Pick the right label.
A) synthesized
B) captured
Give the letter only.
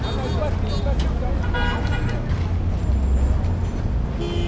B